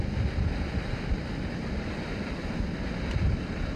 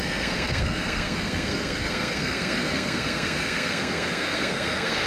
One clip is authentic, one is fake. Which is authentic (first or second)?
first